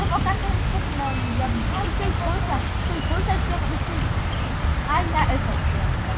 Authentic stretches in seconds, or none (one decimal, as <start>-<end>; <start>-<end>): 0.0-6.2